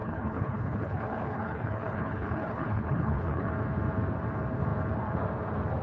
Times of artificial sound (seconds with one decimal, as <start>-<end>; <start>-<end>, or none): 0.0-3.5